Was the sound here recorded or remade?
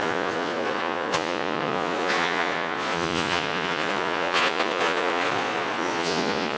remade